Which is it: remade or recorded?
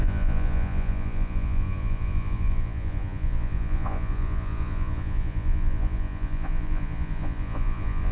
remade